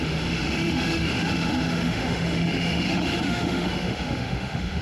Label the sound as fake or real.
fake